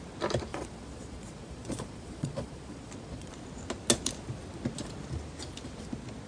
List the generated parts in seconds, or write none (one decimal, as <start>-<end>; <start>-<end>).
0.5-3.3